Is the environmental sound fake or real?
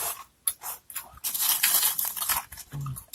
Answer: real